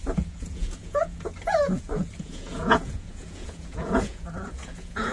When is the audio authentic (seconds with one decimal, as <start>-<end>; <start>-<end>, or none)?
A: none